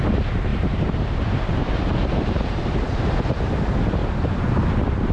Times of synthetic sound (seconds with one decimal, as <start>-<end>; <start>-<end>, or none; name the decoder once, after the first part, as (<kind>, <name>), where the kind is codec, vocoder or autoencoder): 0.5-3.1 (vocoder, BigVGAN v2)

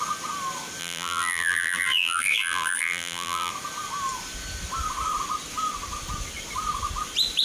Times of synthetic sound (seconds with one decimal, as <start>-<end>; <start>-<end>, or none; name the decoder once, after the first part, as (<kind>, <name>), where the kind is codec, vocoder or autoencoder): 0.8-3.5 (vocoder, BigVGAN v2)

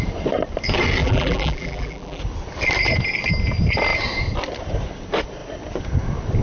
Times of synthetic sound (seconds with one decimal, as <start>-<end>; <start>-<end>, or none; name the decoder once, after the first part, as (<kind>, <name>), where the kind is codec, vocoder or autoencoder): 1.0-2.2 (vocoder, BigVGAN v2)

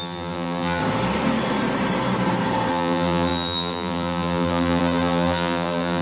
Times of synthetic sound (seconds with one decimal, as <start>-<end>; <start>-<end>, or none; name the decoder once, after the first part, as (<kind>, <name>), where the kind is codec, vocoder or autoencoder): 0.0-0.8 (vocoder, BigVGAN v2); 2.7-6.0